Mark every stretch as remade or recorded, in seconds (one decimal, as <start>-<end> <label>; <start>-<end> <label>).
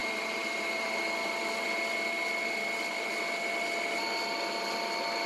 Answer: 0.0-1.0 remade; 1.0-5.3 recorded